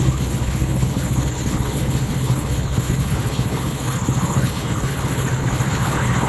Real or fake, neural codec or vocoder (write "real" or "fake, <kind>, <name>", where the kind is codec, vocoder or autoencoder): fake, codec, HILCodec